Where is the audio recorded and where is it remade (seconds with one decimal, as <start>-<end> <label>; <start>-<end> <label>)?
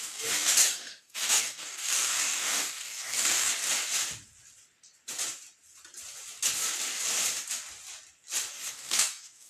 0.0-3.5 remade; 3.5-8.5 recorded; 8.5-9.5 remade